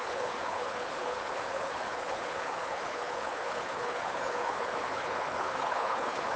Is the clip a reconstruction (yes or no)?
yes